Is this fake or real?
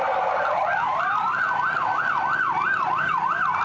real